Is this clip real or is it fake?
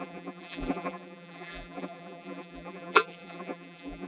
fake